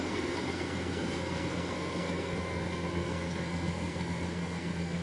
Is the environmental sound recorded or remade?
remade